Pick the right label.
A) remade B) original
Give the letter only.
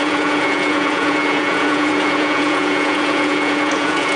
A